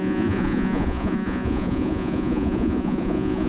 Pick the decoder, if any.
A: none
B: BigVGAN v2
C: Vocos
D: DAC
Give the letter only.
C